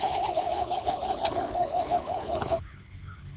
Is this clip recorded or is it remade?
remade